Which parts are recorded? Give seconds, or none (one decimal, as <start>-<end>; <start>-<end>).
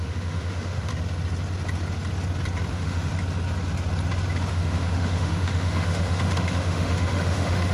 0.9-2.7; 3.1-4.5